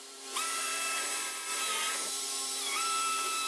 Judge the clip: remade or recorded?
remade